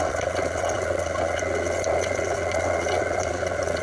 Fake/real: fake